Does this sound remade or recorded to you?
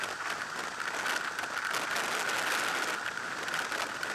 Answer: recorded